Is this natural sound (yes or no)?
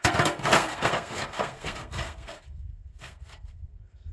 no